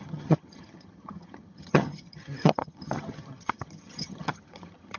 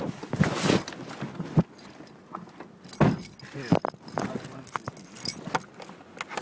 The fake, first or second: first